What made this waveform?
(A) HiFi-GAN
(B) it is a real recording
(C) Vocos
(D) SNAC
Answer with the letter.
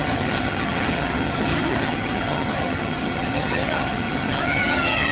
A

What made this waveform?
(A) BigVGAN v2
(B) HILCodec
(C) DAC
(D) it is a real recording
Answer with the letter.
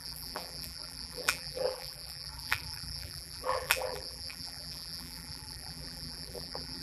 A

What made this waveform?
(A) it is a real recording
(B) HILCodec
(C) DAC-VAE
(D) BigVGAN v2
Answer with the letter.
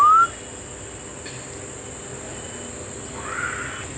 A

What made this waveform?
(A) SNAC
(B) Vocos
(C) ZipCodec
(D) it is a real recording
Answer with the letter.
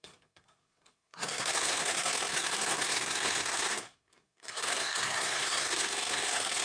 A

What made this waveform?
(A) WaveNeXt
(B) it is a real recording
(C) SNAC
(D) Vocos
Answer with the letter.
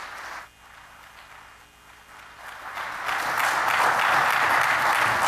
B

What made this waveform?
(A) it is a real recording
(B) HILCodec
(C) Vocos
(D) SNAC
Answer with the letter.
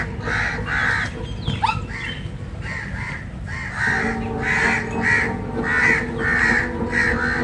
A